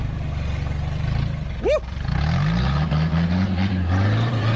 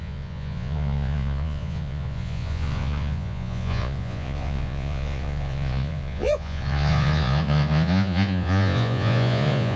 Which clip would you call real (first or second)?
first